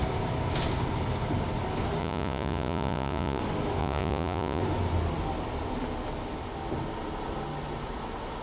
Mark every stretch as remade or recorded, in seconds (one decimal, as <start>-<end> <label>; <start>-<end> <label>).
0.0-2.0 recorded; 2.0-3.4 remade; 3.4-3.8 recorded; 3.8-4.6 remade; 4.6-8.4 recorded